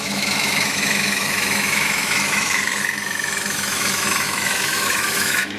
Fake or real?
fake